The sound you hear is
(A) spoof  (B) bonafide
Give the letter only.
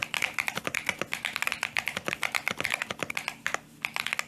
B